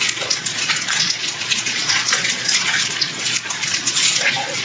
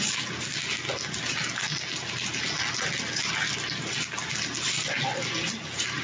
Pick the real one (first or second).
second